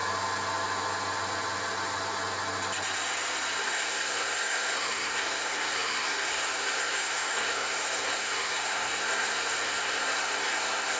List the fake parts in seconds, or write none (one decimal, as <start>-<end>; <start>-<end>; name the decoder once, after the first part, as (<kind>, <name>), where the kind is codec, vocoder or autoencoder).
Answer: 3.6-11.0 (codec, SNAC)